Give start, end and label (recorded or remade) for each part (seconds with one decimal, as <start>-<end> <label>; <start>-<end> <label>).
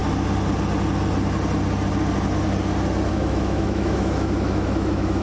0.0-3.1 recorded; 3.1-5.2 remade